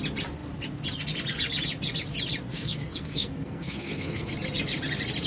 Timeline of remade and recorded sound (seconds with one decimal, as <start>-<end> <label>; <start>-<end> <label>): 0.0-2.5 recorded; 2.5-4.3 remade; 4.3-5.3 recorded